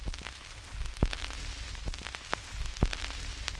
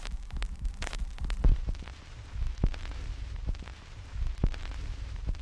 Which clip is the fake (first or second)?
second